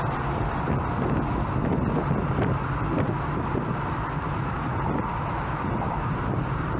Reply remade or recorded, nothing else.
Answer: recorded